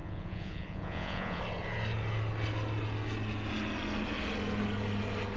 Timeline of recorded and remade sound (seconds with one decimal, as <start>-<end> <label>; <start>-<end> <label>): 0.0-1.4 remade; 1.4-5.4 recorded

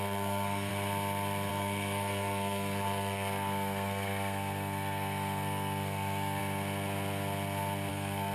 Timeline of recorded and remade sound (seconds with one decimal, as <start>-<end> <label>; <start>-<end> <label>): 0.0-0.7 remade; 0.7-1.5 recorded; 1.5-6.4 remade; 6.4-7.9 recorded; 7.9-8.3 remade

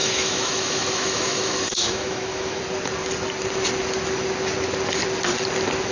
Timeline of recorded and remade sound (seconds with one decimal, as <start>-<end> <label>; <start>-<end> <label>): 0.0-2.6 remade; 2.6-5.9 recorded

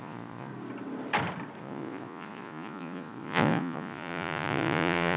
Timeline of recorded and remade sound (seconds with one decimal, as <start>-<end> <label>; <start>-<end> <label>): 0.0-0.5 remade; 0.5-1.6 recorded; 1.6-5.2 remade

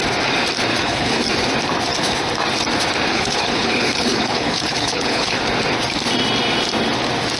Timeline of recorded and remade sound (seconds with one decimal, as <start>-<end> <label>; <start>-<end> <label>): 0.0-0.7 recorded; 0.7-1.2 remade; 1.2-3.1 recorded; 3.1-5.4 remade; 5.4-7.4 recorded

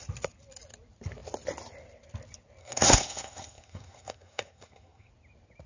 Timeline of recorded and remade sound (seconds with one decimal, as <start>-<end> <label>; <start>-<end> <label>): 0.0-2.6 recorded; 2.6-5.1 remade; 5.1-5.7 recorded

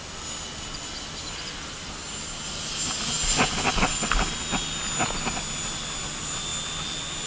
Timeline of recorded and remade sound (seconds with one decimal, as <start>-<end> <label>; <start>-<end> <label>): 0.0-7.3 recorded

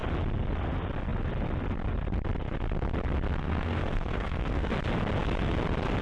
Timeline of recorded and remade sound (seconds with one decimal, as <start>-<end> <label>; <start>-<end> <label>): 0.0-3.4 recorded; 3.4-4.7 remade; 4.7-6.0 recorded